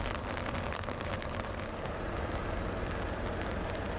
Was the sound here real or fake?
real